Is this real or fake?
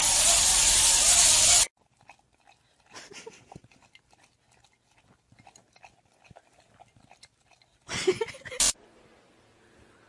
real